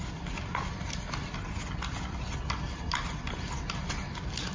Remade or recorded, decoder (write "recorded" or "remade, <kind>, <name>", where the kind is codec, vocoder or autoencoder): recorded